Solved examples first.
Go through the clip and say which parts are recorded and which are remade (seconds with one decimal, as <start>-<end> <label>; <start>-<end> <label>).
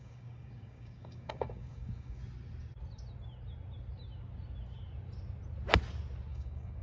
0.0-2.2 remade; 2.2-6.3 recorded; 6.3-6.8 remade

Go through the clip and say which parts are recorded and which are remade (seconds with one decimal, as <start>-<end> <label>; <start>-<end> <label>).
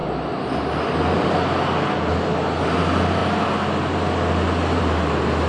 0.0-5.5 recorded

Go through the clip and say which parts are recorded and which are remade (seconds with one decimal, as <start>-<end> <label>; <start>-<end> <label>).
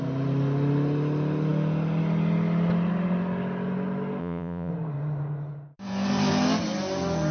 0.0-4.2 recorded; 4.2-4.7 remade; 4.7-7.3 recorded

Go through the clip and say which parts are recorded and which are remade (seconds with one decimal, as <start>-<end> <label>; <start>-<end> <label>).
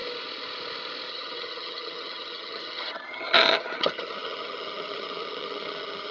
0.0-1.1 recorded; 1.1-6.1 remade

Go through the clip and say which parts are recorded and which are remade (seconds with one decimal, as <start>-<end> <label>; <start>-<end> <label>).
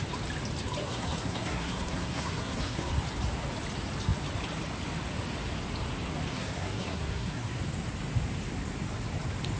0.0-0.8 recorded; 0.8-2.9 remade; 2.9-6.3 recorded; 6.3-7.6 remade; 7.6-9.6 recorded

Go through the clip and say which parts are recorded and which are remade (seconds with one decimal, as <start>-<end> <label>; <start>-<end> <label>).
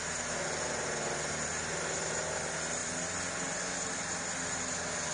0.0-5.1 recorded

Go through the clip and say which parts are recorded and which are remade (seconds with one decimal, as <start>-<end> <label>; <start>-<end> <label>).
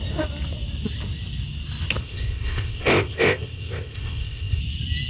0.0-2.0 recorded; 2.0-4.6 remade; 4.6-5.1 recorded